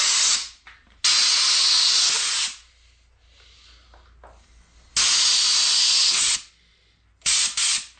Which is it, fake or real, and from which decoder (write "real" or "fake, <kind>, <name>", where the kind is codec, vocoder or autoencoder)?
real